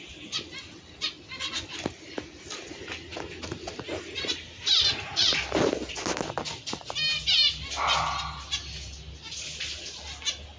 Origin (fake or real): real